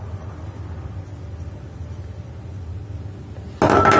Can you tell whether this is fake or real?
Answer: real